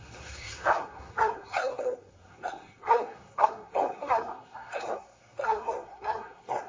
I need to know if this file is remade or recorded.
remade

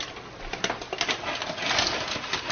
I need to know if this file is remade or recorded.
recorded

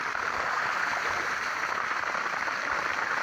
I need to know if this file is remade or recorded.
recorded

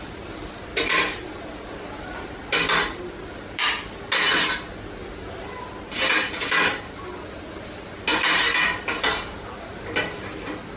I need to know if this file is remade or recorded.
recorded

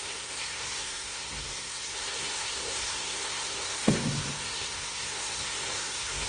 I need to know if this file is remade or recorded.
remade